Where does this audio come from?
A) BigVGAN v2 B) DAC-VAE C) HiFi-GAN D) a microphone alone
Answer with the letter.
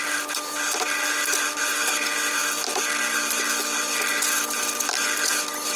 D